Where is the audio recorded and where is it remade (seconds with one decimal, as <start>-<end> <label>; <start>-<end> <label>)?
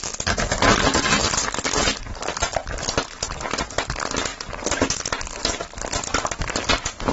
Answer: 0.0-7.1 recorded